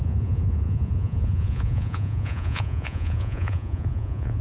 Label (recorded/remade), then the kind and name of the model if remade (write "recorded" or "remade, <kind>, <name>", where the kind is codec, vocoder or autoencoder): remade, vocoder, Vocos